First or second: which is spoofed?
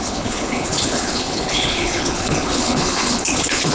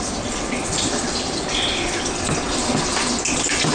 first